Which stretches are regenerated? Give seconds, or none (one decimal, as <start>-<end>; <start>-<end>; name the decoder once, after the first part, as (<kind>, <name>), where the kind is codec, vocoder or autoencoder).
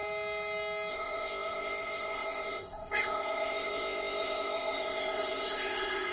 0.9-6.1 (codec, ZipCodec)